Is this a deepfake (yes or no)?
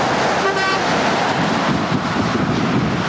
no